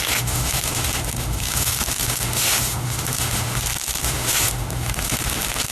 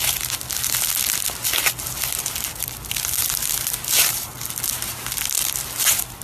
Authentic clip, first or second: second